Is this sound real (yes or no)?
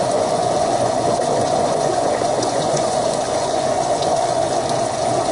no